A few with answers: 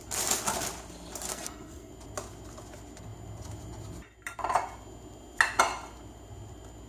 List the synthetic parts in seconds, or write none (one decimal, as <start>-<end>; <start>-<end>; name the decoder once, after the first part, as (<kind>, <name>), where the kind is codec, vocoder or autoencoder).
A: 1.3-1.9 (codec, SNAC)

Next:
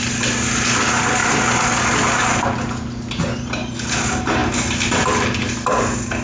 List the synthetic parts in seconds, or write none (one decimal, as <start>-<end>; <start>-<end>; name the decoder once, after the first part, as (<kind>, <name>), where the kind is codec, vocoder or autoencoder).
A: none

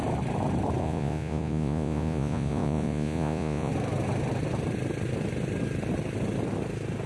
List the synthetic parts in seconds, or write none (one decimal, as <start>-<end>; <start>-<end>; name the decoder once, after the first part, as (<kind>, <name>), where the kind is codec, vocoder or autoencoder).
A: 0.8-3.7 (vocoder, Vocos)

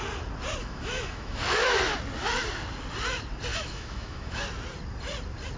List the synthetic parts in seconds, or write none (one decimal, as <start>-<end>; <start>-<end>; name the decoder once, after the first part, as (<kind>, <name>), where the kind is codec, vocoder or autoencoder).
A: 0.6-1.8 (autoencoder, DAC-VAE); 3.5-4.4

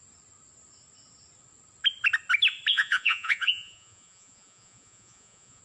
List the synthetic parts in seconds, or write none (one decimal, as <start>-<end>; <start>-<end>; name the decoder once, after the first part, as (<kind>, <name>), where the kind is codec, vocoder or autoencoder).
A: 2.7-5.6 (vocoder, Vocos)